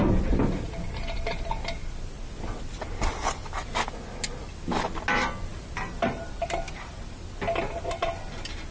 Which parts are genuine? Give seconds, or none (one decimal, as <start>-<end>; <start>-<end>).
0.0-5.5; 7.0-8.7